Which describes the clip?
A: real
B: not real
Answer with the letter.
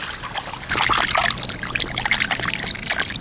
A